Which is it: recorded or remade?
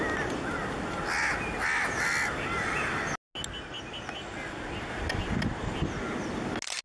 recorded